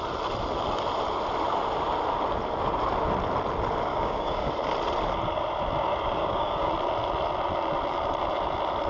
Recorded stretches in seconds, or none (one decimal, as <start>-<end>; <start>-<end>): 0.0-3.9; 4.5-6.2; 6.7-8.9